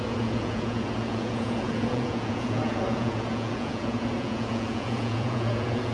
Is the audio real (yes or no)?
no